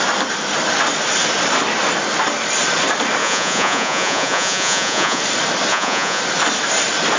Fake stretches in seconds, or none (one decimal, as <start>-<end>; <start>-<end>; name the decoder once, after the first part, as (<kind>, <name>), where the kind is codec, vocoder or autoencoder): 3.2-5.2 (vocoder, Vocos); 5.7-6.2

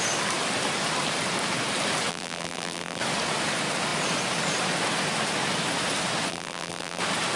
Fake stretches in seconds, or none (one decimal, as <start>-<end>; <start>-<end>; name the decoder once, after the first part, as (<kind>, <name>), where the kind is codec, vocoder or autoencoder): 2.1-3.0 (vocoder, BigVGAN v2); 6.3-7.0

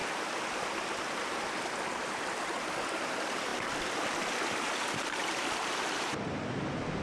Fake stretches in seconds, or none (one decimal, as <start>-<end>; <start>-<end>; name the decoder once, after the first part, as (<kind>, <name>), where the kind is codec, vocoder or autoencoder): none

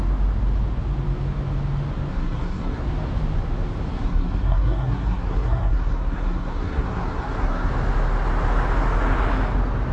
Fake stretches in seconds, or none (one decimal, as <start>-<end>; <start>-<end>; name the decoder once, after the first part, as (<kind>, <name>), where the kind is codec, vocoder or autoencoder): 2.1-2.8 (codec, SNAC); 3.9-7.7

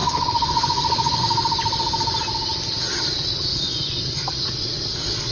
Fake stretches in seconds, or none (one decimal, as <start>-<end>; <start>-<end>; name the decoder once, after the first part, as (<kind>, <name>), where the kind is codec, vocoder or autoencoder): 0.0-1.2 (vocoder, Vocos); 3.5-4.0

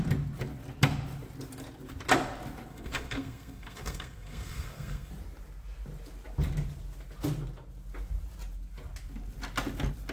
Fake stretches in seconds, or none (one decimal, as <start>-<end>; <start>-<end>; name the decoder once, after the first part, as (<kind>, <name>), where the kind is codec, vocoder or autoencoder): 2.7-5.1 (codec, SNAC)

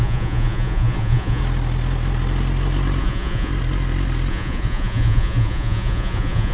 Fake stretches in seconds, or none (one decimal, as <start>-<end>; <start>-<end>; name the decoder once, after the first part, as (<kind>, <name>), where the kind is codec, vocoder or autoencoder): 0.0-1.4 (vocoder, Vocos); 3.0-3.5; 4.3-6.5

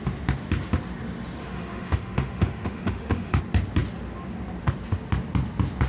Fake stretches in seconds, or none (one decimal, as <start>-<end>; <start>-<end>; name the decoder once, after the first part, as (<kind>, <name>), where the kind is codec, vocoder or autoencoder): 1.4-3.4 (autoencoder, DAC-VAE)